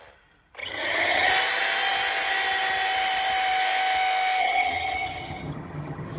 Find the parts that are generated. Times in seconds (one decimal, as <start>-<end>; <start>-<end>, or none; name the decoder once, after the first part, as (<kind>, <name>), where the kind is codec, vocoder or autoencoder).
0.6-1.3 (vocoder, HiFi-GAN); 4.4-6.2